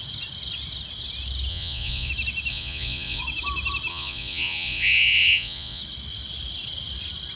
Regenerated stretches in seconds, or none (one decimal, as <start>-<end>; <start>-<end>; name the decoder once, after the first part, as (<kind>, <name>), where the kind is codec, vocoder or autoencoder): 1.5-2.1 (vocoder, Vocos); 2.5-3.2; 3.9-5.8